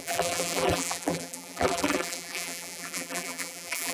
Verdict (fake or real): fake